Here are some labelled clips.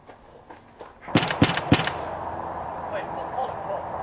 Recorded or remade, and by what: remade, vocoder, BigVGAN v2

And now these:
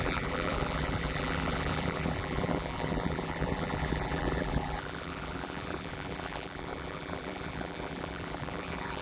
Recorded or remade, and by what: remade, vocoder, BigVGAN v2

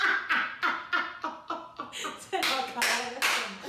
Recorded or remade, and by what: recorded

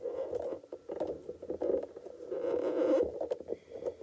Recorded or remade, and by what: recorded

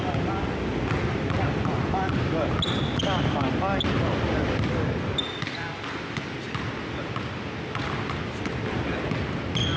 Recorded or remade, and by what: recorded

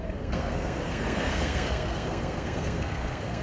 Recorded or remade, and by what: remade, codec, SNAC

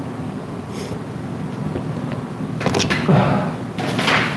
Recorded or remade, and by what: recorded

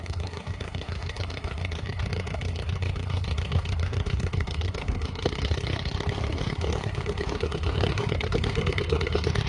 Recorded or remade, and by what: remade, codec, SNAC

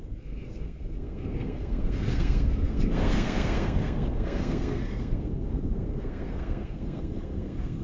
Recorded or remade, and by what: remade, codec, SNAC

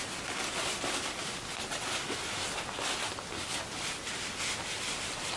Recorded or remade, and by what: recorded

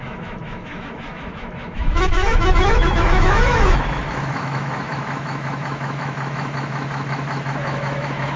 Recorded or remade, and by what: remade, autoencoder, DAC-VAE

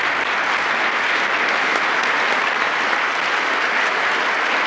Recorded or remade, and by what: recorded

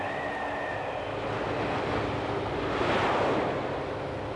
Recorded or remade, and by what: recorded